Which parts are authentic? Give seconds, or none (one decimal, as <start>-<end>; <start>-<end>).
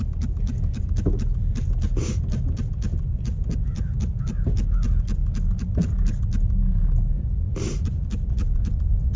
0.0-9.2